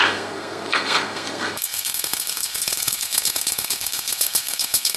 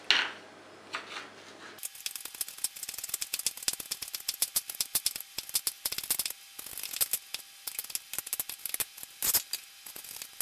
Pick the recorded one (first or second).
second